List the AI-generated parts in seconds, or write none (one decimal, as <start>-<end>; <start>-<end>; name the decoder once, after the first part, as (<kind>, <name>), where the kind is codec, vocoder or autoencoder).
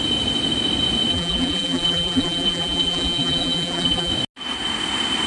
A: 1.1-4.1 (vocoder, BigVGAN v2)